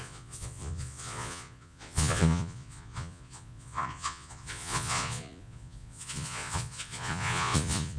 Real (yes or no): no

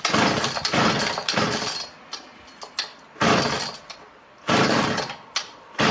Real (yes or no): yes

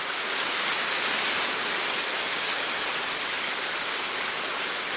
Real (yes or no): yes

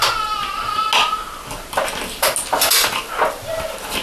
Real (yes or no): yes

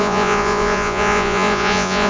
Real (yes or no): no